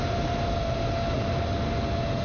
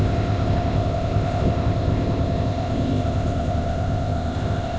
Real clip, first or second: first